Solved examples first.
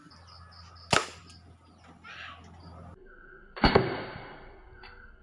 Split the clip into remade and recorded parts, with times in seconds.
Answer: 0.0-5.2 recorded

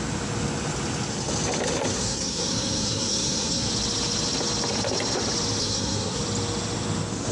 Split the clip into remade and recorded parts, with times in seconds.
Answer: 0.0-1.9 recorded; 1.9-3.7 remade; 3.7-5.6 recorded; 5.6-6.2 remade; 6.2-7.3 recorded

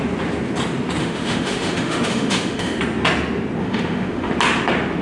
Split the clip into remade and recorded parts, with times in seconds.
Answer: 0.0-1.0 recorded; 1.0-2.8 remade; 2.8-3.6 recorded; 3.6-4.3 remade; 4.3-5.0 recorded